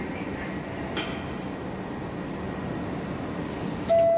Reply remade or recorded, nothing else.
recorded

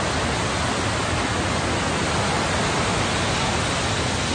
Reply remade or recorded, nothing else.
recorded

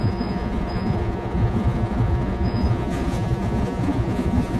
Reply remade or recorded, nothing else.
remade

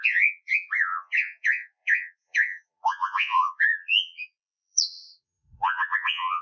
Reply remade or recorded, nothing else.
remade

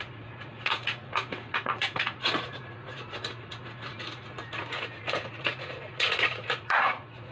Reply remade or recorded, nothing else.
remade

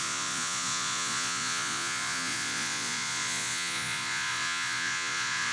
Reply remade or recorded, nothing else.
remade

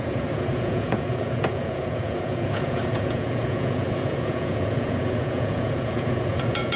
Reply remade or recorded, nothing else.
remade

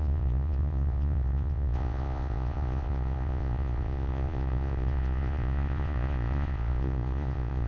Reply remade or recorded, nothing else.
remade